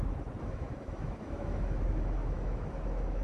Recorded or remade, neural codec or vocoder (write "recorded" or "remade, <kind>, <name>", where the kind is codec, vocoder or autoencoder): remade, autoencoder, DAC-VAE